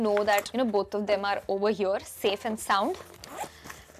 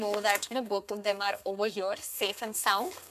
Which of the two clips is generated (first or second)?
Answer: second